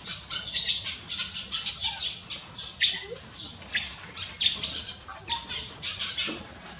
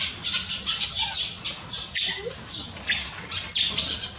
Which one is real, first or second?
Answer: second